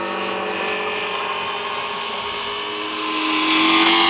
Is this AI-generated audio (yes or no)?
no